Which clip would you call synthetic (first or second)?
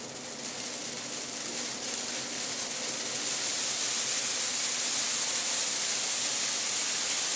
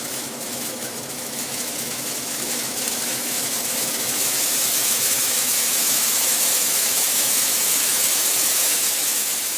second